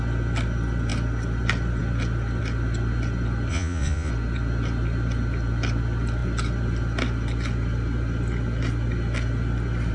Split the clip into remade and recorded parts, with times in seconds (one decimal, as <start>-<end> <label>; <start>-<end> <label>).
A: 0.0-3.5 recorded; 3.5-4.1 remade; 4.1-9.9 recorded